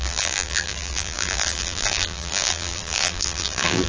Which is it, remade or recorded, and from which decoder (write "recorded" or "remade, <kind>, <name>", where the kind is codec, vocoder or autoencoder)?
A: remade, vocoder, BigVGAN v2